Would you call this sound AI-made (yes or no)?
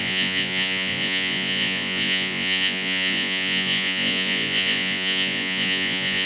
yes